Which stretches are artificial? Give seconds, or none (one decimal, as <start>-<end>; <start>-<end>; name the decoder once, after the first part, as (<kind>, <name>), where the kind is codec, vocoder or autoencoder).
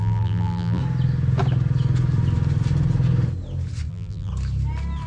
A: 0.0-0.8 (vocoder, BigVGAN v2); 3.9-4.3